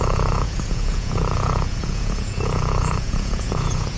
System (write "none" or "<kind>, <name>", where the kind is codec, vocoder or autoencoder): vocoder, Vocos